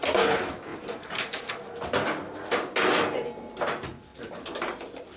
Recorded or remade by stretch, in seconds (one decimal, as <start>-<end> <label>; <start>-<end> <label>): 0.0-0.7 recorded; 0.7-1.5 remade; 1.5-4.1 recorded; 4.1-4.7 remade; 4.7-5.2 recorded